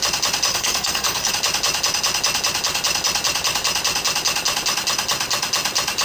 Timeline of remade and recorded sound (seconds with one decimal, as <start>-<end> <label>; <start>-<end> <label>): 0.0-0.5 recorded; 0.5-1.3 remade; 1.3-6.0 recorded